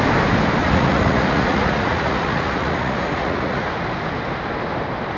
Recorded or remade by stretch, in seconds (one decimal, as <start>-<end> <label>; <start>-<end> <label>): 0.0-0.6 recorded; 0.6-3.7 remade; 3.7-5.2 recorded